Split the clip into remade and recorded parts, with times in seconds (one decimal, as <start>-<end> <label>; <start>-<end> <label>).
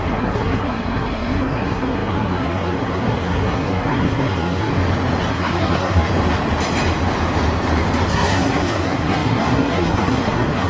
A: 0.0-4.7 remade; 4.7-5.3 recorded; 5.3-6.1 remade; 6.1-8.1 recorded; 8.1-10.7 remade